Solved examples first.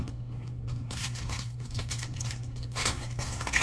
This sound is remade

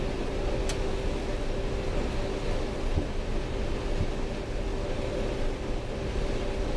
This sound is recorded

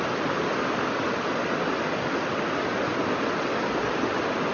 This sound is recorded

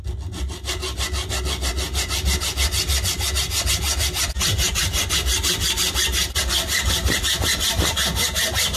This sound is recorded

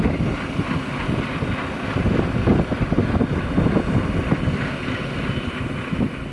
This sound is recorded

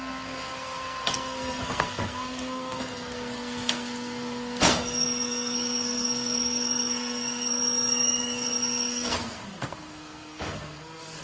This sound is remade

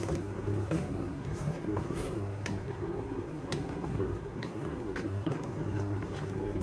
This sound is remade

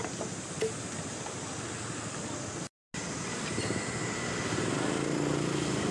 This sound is recorded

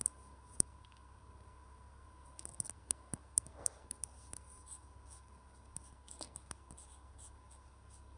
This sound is remade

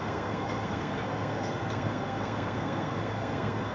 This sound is remade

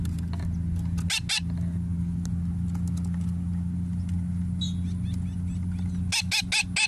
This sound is recorded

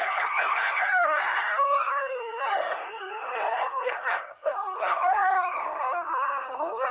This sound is remade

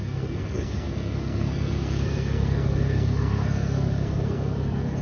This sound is remade